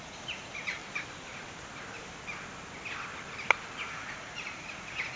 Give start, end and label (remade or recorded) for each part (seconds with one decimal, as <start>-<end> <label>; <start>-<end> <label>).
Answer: 0.0-0.8 remade; 0.8-3.9 recorded; 3.9-5.2 remade

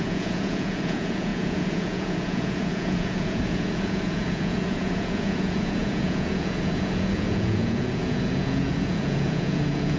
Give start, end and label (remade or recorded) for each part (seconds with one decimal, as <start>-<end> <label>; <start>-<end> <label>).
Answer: 0.0-10.0 remade

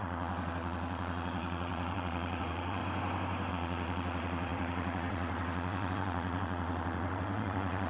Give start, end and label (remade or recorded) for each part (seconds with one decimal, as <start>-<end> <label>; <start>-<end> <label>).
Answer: 0.0-2.8 remade; 2.8-3.5 recorded; 3.5-7.9 remade

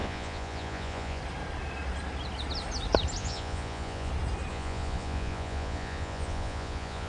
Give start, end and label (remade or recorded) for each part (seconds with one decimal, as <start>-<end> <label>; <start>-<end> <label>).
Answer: 0.0-1.2 remade; 1.2-3.2 recorded; 3.2-4.1 remade; 4.1-4.5 recorded; 4.5-7.1 remade

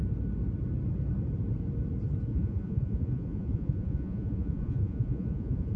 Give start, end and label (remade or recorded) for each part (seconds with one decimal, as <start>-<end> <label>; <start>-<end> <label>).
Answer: 0.0-2.3 recorded; 2.3-5.8 remade

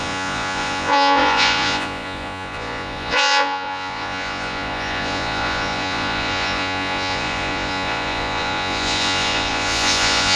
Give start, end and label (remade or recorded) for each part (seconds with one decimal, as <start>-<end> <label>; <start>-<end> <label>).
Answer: 0.0-10.4 remade

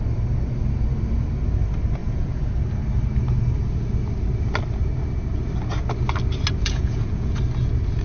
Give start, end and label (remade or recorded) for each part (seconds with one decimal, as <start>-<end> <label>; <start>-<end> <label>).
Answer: 0.0-2.0 recorded; 2.0-2.5 remade; 2.5-6.6 recorded; 6.6-7.4 remade; 7.4-8.0 recorded